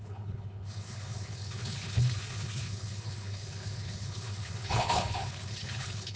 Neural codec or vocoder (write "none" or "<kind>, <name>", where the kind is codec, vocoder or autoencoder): codec, HILCodec